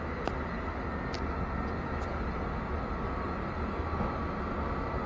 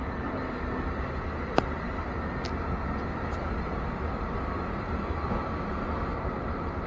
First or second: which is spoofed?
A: second